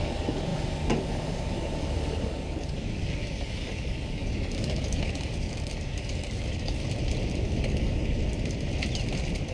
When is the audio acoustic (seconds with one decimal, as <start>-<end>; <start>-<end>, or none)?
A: 6.8-7.4; 8.2-9.5